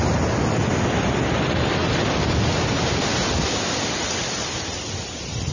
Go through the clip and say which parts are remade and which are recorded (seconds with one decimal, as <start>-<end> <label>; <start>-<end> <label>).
0.0-5.5 remade

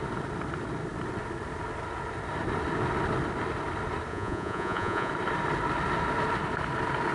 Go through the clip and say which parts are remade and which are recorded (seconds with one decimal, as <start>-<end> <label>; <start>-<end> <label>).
0.0-4.1 recorded; 4.1-5.1 remade; 5.1-7.1 recorded

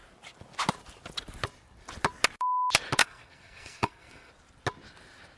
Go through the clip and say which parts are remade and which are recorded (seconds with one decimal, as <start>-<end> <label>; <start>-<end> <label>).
0.0-3.0 recorded; 3.0-4.3 remade; 4.3-5.4 recorded

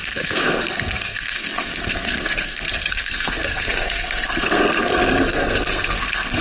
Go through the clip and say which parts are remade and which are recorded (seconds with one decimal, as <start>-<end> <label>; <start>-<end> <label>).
0.0-6.4 remade

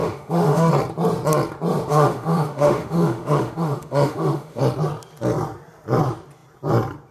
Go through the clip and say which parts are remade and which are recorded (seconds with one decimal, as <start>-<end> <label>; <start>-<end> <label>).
0.0-0.7 remade; 0.7-1.9 recorded; 1.9-4.6 remade; 4.6-7.1 recorded

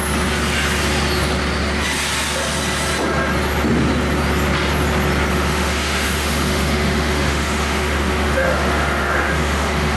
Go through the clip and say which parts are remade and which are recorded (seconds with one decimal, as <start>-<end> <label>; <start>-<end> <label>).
0.0-5.3 recorded; 5.3-10.0 remade